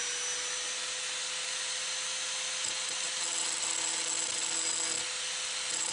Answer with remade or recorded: recorded